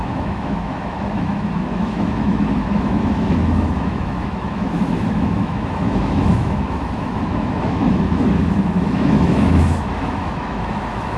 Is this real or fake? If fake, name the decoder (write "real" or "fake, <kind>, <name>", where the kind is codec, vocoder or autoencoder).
fake, autoencoder, DAC-VAE